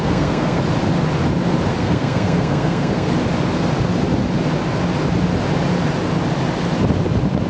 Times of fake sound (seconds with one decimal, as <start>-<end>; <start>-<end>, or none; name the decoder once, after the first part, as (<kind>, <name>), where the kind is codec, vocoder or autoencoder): 0.0-0.6 (codec, SNAC); 1.7-3.1